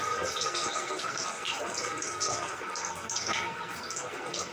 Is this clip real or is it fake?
fake